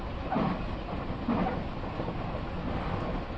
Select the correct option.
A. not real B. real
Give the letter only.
B